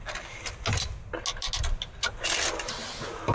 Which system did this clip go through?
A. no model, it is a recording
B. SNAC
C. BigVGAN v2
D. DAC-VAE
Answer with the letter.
A